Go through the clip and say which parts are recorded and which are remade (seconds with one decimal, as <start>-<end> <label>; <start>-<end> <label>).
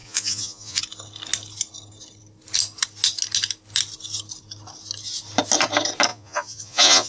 0.0-0.8 remade; 0.8-6.1 recorded; 6.1-7.1 remade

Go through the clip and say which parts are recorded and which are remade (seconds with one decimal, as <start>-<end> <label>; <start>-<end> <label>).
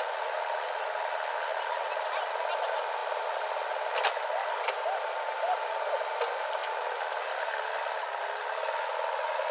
0.0-9.5 recorded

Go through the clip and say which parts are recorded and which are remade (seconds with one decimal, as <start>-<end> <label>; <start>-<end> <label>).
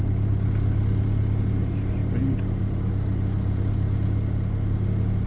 0.0-5.3 recorded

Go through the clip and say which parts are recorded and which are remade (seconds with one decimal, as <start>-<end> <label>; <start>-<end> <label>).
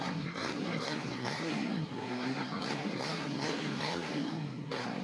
0.0-5.0 remade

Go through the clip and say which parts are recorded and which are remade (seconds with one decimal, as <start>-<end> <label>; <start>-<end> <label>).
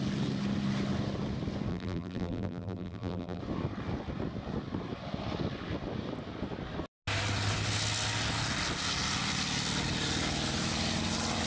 0.0-1.7 recorded; 1.7-3.4 remade; 3.4-11.5 recorded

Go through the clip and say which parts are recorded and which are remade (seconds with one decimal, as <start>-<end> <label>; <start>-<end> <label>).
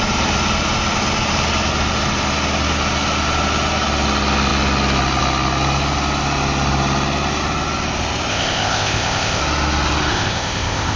0.0-8.3 recorded; 8.3-9.4 remade; 9.4-10.1 recorded; 10.1-11.0 remade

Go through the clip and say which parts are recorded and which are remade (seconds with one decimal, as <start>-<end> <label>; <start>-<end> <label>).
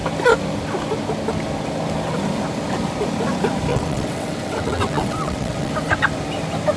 0.0-3.7 recorded; 3.7-5.7 remade; 5.7-6.8 recorded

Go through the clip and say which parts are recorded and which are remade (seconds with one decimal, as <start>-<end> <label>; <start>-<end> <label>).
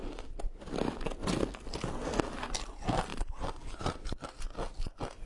0.0-3.1 recorded; 3.1-4.4 remade; 4.4-5.3 recorded